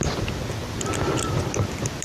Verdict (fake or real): real